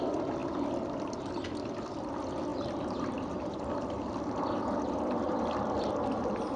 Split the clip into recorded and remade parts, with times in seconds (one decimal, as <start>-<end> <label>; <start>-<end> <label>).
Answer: 0.0-6.6 recorded